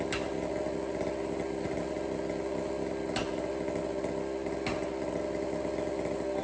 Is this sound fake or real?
real